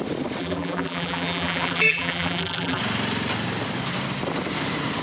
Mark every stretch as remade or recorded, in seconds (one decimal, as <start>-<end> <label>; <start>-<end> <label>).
0.0-0.4 recorded; 0.4-2.8 remade; 2.8-5.0 recorded